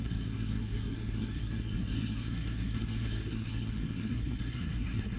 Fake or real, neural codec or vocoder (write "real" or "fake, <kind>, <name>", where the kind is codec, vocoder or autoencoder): fake, codec, SNAC